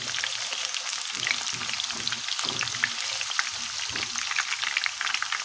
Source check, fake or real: real